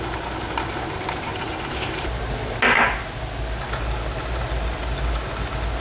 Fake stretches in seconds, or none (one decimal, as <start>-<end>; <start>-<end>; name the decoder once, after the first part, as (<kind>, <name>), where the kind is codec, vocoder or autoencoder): none